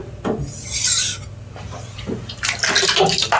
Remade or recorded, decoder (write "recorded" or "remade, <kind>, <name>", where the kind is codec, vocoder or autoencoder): recorded